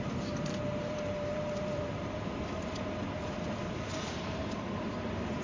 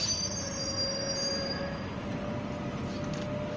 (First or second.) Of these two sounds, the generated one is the first